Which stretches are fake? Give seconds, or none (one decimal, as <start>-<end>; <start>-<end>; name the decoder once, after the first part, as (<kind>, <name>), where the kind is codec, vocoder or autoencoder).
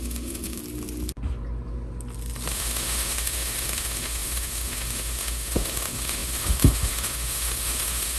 0.0-0.6 (autoencoder, DAC-VAE); 2.5-8.2